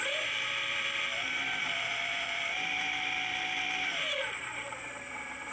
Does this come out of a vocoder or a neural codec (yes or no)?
yes